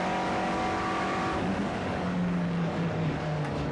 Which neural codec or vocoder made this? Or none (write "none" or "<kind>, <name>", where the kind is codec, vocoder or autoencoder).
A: codec, DAC